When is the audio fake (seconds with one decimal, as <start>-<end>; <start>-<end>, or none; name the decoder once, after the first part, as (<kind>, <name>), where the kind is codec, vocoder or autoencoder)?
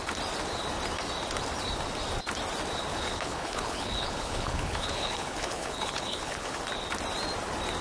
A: 2.9-6.6 (codec, HILCodec)